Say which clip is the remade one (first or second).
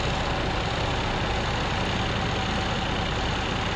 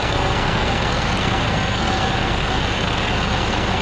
second